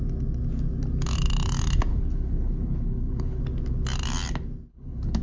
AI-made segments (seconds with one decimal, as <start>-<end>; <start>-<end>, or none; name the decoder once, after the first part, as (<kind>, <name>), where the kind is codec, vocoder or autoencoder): 1.9-3.4 (codec, HILCodec); 4.7-5.2